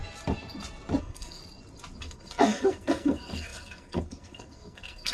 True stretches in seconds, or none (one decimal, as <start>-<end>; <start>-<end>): 0.0-1.0; 1.4-2.0